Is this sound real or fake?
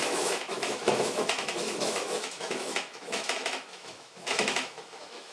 fake